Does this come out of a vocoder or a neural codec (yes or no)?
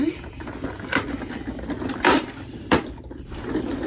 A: no